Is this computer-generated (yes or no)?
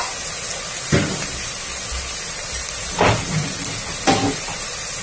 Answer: no